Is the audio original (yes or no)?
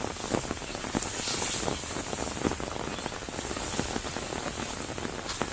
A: yes